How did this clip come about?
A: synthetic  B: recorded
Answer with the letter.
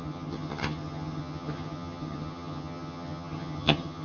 A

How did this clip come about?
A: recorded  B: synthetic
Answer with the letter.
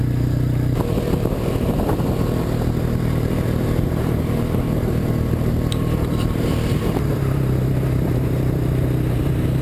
B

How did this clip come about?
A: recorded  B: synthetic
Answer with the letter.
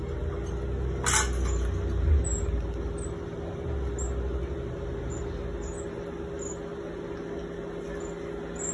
A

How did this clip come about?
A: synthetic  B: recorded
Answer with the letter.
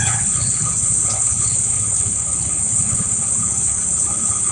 A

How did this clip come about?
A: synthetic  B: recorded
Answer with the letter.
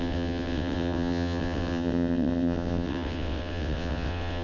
A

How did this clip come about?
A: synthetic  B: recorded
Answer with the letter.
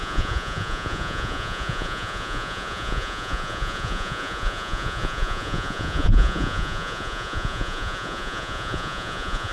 A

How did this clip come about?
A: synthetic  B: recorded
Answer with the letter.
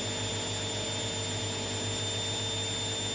B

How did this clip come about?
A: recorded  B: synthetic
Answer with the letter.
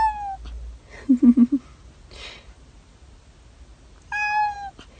A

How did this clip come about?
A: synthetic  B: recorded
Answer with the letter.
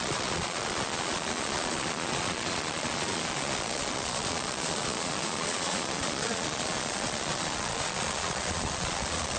A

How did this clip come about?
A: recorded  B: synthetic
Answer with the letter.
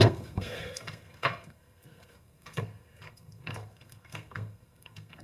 B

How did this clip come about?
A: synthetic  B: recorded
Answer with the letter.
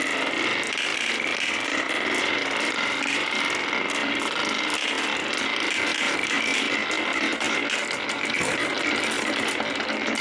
B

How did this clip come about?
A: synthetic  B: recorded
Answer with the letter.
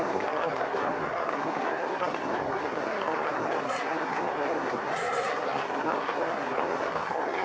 A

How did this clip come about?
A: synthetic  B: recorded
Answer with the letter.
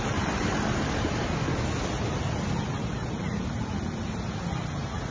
B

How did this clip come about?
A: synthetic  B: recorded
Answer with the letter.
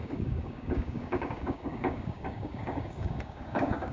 A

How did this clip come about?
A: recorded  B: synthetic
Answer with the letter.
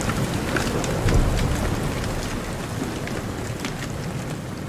A